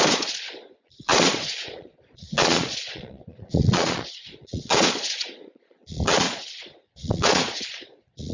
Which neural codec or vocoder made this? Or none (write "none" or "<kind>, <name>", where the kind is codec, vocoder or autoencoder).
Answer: vocoder, Vocos